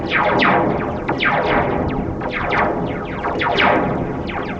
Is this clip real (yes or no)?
yes